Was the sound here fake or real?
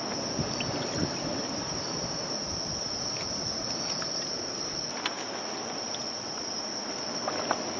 real